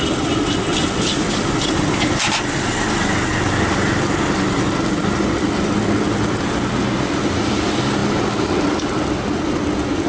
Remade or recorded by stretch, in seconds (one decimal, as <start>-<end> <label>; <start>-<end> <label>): 0.0-10.1 recorded